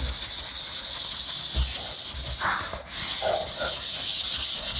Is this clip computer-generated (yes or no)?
no